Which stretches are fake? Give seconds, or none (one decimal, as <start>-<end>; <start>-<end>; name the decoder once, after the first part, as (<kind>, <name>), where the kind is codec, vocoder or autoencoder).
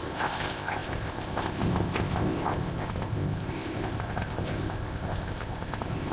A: 0.0-6.1 (codec, ZipCodec)